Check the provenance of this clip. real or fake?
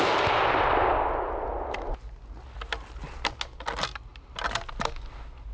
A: real